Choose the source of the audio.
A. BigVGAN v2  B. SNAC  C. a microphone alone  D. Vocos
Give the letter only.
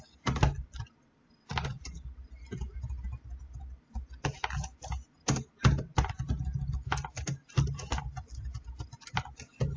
C